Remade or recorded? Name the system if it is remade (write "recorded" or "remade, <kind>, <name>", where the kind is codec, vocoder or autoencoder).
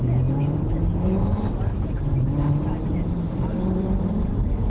remade, vocoder, BigVGAN v2